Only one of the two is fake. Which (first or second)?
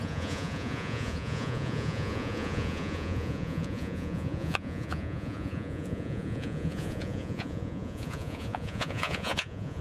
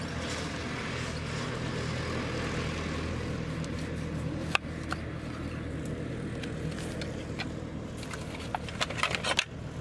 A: first